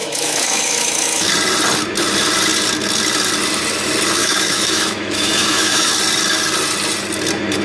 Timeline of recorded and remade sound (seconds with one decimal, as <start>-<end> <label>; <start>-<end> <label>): 0.0-1.3 remade; 1.3-4.2 recorded; 4.2-5.9 remade; 5.9-7.6 recorded